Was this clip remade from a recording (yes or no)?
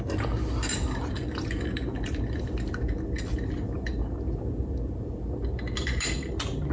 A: no